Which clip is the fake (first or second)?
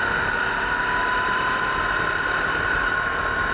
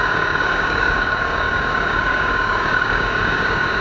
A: second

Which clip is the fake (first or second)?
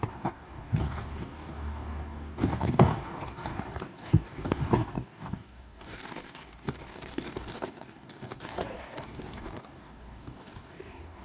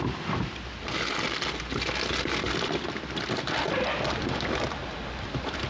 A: first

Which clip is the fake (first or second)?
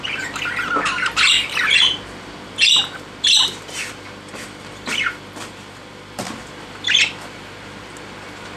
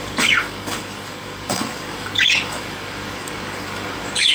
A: second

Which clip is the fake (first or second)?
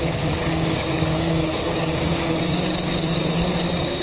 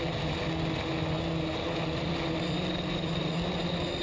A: first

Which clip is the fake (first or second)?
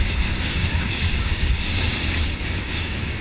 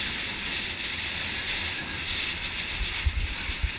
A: first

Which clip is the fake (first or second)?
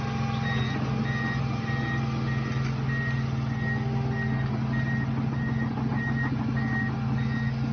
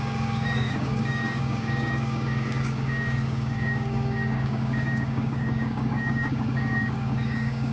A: second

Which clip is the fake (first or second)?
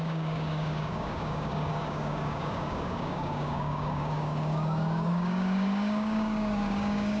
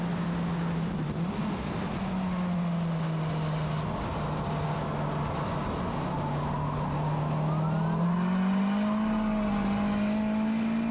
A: first